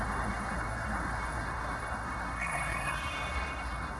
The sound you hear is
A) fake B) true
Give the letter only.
A